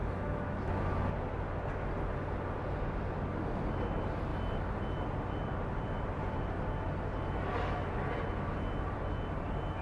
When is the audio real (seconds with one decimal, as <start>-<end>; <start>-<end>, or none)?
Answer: 0.8-9.8